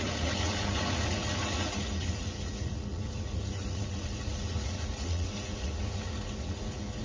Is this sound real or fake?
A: fake